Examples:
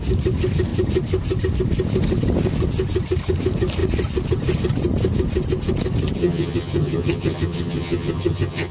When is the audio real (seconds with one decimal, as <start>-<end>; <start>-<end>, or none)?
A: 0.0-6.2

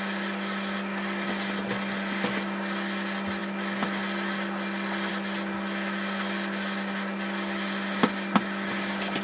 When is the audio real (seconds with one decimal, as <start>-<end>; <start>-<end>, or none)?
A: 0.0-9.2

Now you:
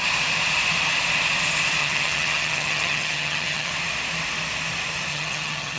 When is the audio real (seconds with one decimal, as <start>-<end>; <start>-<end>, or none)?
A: 0.0-1.8; 3.7-5.1

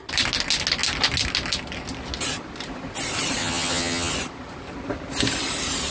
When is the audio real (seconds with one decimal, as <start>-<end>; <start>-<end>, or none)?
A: 0.0-3.4; 4.1-5.9

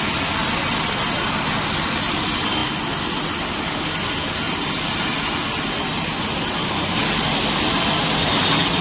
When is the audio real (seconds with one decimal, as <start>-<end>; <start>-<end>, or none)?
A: 0.0-8.8

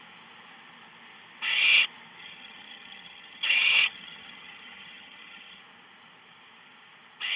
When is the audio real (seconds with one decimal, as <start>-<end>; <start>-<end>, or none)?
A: 0.0-2.2; 5.6-7.4

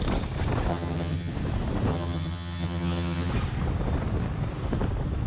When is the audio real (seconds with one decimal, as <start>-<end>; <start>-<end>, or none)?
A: 0.0-0.7; 1.3-1.9; 3.3-5.3